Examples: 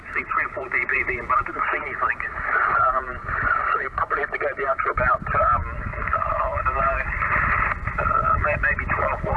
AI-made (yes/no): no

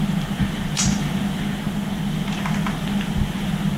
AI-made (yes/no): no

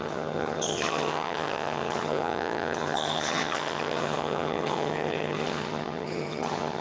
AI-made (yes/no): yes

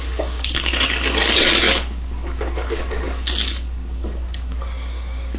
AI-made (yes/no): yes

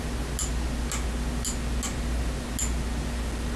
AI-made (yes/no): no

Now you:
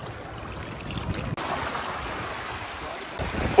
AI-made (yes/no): no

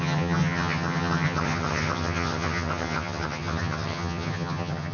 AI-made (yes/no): yes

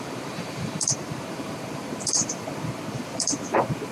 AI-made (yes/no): yes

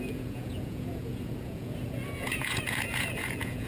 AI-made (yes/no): yes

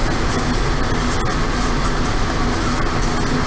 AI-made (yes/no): no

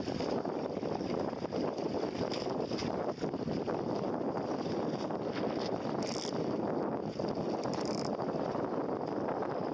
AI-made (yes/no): no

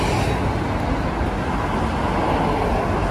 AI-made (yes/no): no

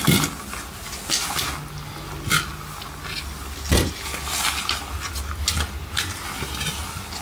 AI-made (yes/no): no